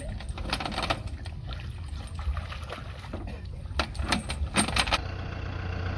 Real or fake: real